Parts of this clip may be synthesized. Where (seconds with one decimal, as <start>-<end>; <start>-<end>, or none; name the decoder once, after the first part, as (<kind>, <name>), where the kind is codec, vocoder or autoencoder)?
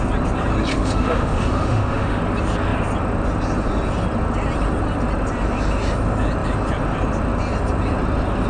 0.7-2.2 (autoencoder, DAC-VAE)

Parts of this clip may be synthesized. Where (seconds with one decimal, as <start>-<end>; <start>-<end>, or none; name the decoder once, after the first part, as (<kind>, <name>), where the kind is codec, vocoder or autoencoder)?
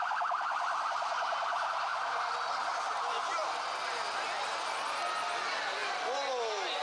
none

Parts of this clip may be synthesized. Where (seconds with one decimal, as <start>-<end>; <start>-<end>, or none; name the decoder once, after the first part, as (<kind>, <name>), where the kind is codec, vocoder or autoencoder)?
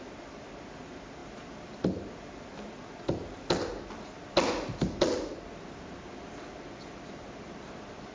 none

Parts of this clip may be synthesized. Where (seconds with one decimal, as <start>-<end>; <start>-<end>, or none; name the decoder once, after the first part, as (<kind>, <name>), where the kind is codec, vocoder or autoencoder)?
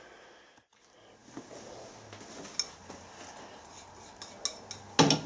none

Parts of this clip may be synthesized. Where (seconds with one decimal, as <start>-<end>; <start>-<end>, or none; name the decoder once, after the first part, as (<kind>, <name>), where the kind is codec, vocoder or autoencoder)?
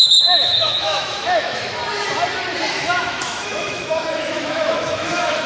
0.0-1.8 (autoencoder, DAC-VAE); 2.7-5.5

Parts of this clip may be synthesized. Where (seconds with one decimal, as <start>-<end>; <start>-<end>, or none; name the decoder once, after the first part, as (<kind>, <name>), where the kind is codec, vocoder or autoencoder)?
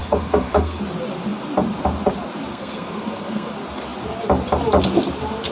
0.0-0.8 (codec, SNAC); 2.5-3.5